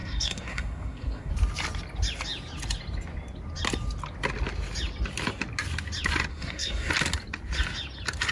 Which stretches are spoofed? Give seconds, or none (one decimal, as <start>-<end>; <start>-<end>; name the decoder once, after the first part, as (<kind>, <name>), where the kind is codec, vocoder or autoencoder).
0.0-1.3 (codec, SNAC); 6.3-6.9